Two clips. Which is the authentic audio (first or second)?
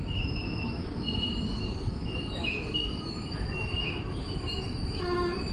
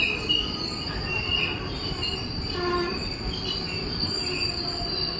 second